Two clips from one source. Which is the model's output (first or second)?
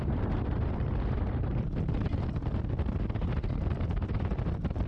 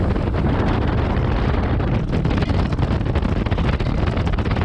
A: first